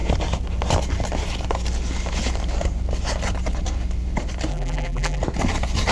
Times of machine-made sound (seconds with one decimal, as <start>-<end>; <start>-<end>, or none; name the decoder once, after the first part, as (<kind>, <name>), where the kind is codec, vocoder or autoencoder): 4.5-5.2 (vocoder, BigVGAN v2)